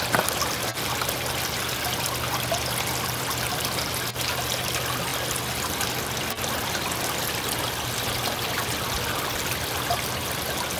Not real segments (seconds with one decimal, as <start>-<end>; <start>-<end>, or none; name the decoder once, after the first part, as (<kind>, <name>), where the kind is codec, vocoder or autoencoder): none